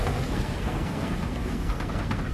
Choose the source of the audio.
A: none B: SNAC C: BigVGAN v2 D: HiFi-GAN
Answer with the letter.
B